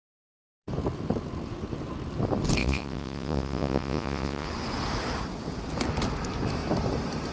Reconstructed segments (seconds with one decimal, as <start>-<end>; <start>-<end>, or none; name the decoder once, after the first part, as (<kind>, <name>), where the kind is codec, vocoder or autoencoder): 2.6-4.5 (vocoder, Vocos)